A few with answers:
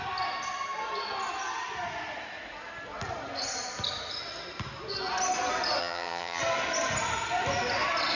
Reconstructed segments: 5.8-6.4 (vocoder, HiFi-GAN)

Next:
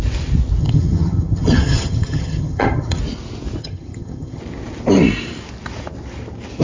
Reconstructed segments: 0.6-3.0 (vocoder, HiFi-GAN); 3.6-4.4

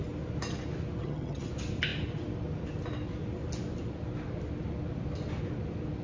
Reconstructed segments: 1.0-1.5 (vocoder, HiFi-GAN)

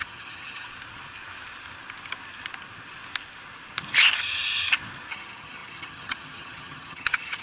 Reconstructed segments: 0.0-0.7 (vocoder, HiFi-GAN); 5.1-7.4